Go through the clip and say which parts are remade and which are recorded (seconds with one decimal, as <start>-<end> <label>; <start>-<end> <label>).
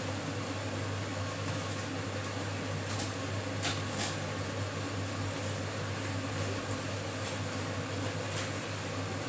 0.0-1.1 recorded; 1.1-1.8 remade; 1.8-9.3 recorded